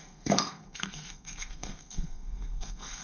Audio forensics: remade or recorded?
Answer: remade